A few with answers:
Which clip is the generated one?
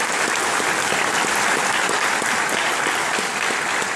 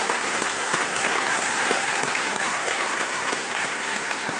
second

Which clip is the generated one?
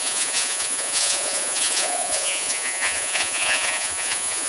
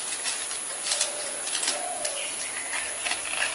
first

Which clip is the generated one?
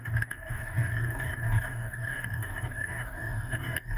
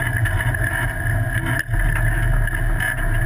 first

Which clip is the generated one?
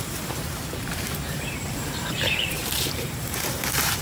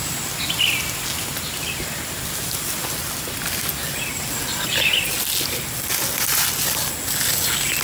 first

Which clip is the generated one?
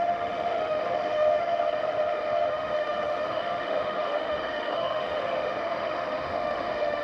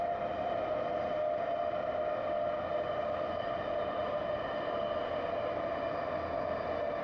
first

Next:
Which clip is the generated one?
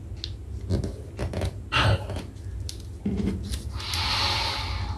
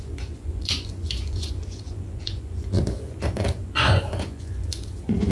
second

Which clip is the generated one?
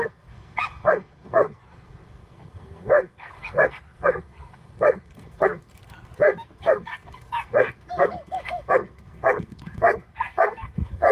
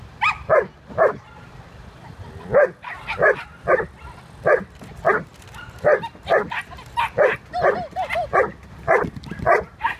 first